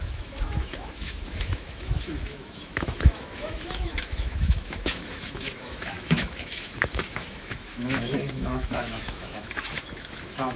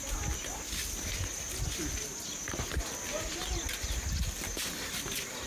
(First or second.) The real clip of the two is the second